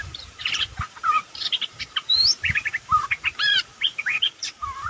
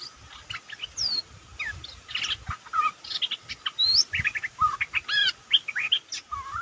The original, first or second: second